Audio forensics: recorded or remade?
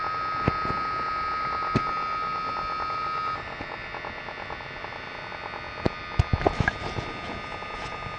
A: recorded